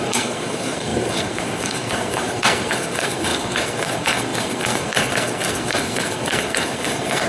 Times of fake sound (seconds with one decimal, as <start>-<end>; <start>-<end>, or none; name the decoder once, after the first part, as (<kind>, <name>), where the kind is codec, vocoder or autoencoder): 0.0-7.3 (codec, SNAC)